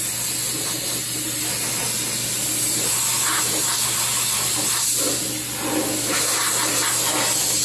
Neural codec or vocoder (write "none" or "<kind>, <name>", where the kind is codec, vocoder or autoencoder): none